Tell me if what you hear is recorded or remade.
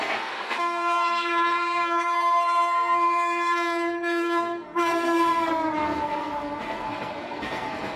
remade